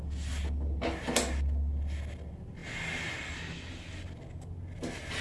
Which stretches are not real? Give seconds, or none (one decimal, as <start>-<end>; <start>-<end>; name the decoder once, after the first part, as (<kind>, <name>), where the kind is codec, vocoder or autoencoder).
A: none

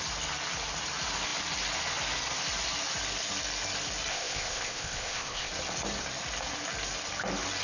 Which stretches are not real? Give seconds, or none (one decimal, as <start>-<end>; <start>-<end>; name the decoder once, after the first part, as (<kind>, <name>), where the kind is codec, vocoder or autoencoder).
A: 4.1-5.5 (codec, ZipCodec)